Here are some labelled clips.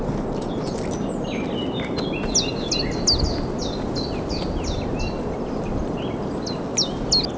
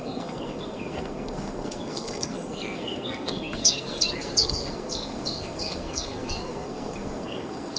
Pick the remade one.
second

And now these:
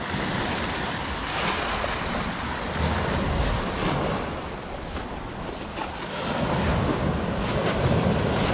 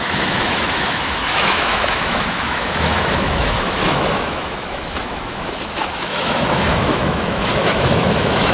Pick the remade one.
second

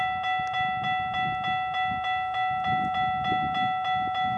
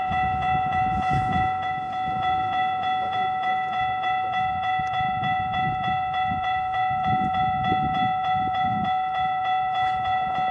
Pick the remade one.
second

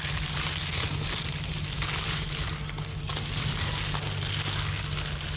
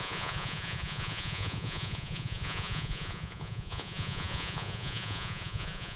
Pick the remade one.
second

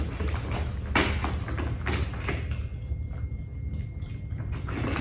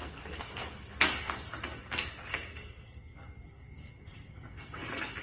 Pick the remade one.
second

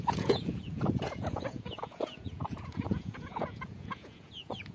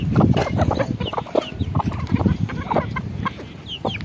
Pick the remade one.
first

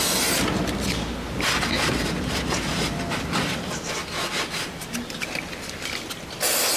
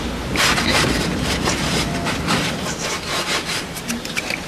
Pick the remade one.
second